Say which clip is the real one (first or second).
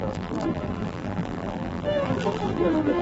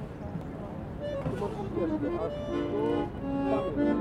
second